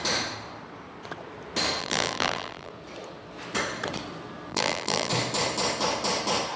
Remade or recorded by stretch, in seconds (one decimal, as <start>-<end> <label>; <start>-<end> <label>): 0.0-1.8 recorded; 1.8-2.7 remade; 2.7-4.5 recorded; 4.5-5.1 remade; 5.1-6.6 recorded